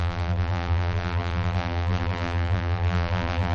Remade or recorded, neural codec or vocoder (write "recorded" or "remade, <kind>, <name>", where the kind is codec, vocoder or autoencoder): remade, vocoder, BigVGAN v2